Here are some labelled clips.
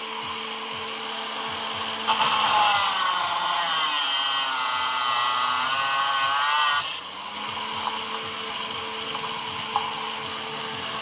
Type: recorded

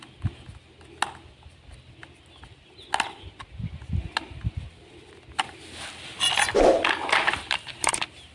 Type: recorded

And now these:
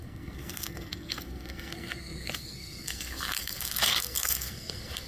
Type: remade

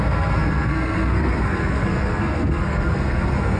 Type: remade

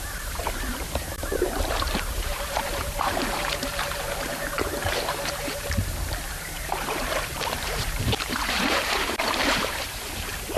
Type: remade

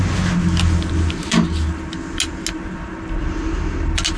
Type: recorded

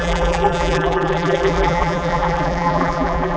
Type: remade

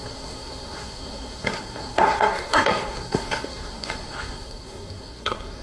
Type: remade